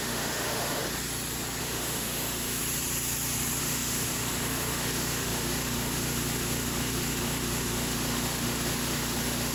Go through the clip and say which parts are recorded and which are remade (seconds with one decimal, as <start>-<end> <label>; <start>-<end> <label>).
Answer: 0.0-0.8 remade; 0.8-1.6 recorded; 1.6-2.6 remade; 2.6-3.6 recorded; 3.6-9.5 remade